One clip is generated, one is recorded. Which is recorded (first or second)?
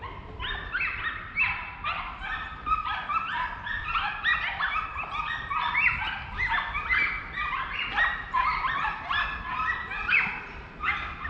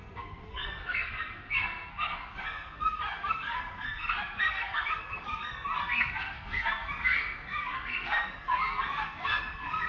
first